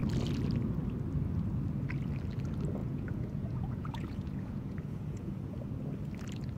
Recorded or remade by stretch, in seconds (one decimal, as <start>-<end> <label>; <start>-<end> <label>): 0.0-2.8 recorded; 2.8-5.7 remade; 5.7-6.6 recorded